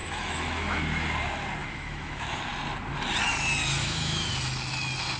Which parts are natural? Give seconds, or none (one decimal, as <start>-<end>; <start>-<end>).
0.8-1.6; 2.4-3.8; 4.3-5.2